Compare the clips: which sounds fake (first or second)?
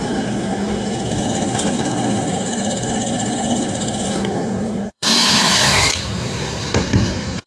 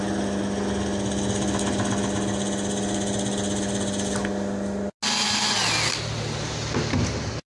first